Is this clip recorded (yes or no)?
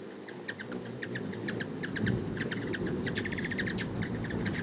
no